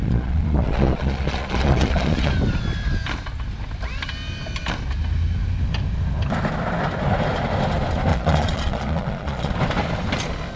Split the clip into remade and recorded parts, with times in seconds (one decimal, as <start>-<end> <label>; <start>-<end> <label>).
0.0-2.3 remade; 2.3-8.1 recorded; 8.1-9.5 remade; 9.5-10.6 recorded